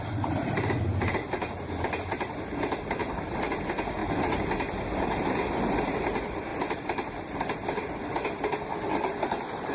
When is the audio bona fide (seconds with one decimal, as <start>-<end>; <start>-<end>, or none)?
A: 4.0-5.6